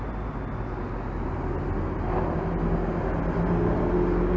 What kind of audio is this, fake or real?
real